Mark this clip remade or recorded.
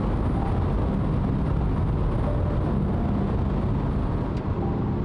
recorded